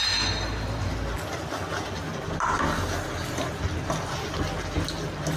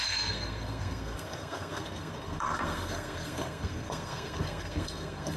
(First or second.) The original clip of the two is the first